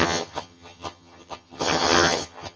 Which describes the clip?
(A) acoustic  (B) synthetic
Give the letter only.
B